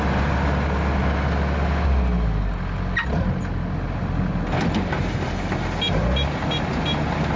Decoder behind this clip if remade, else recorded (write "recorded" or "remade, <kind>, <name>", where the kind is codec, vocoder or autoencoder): recorded